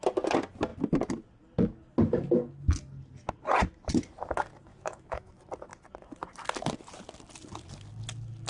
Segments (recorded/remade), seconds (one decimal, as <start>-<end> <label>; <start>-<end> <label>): 0.0-4.7 recorded; 4.7-5.3 remade; 5.3-8.5 recorded